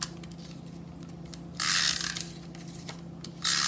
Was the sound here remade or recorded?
recorded